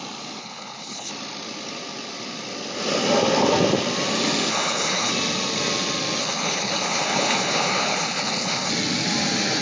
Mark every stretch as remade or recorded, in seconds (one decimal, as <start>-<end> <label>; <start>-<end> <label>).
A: 0.0-0.4 recorded; 0.4-1.1 remade; 1.1-4.5 recorded; 4.5-5.1 remade; 5.1-6.2 recorded; 6.2-8.7 remade; 8.7-9.6 recorded